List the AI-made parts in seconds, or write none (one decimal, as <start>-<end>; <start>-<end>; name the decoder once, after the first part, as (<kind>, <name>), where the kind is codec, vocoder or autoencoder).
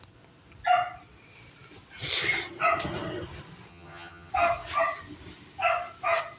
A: 3.7-4.3 (vocoder, HiFi-GAN)